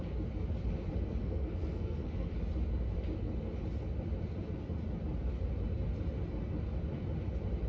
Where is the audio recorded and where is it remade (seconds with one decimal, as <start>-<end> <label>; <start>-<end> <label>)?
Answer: 0.0-1.2 recorded; 1.2-2.3 remade; 2.3-7.7 recorded